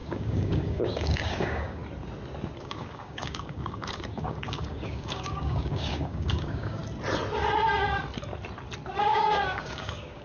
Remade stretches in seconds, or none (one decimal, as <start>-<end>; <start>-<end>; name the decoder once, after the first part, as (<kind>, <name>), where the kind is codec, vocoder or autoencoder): 0.0-1.8 (codec, DAC); 2.6-6.8; 9.0-10.2